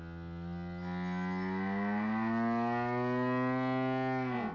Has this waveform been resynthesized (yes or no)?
no